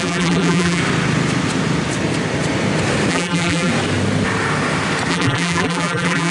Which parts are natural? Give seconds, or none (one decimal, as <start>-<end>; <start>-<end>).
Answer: 0.8-3.1; 3.7-5.1